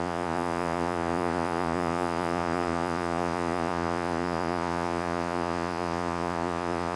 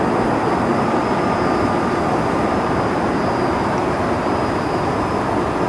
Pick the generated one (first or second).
first